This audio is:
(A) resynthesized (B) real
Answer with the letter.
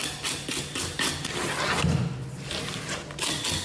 B